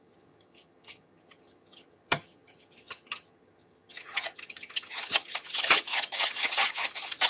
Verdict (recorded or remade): remade